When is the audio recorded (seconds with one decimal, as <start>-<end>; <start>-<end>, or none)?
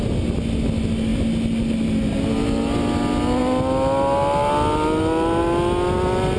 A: 0.0-6.4